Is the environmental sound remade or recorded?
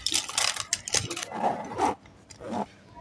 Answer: recorded